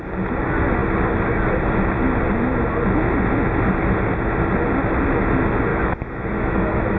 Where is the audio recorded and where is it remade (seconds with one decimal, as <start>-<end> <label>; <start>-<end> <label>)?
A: 0.0-5.7 recorded; 5.7-7.0 remade